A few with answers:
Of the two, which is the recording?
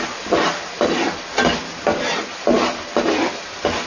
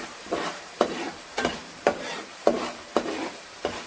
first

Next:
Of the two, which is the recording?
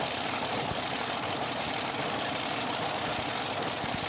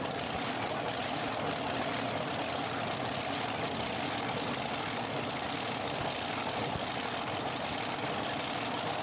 second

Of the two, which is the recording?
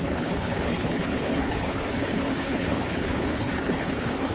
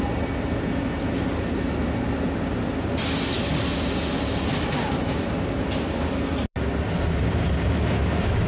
second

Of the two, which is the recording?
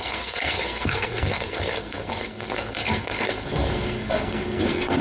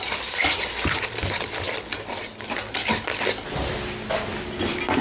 second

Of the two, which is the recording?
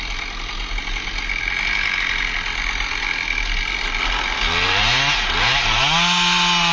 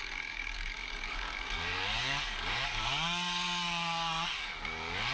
first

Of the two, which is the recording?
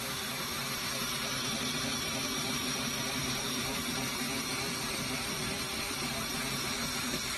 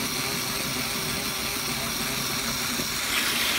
second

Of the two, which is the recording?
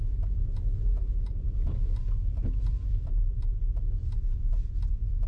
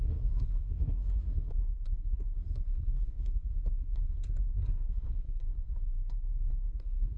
first